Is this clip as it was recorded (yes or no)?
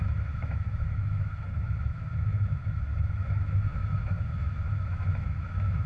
no